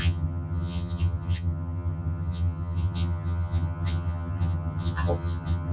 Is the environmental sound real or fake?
fake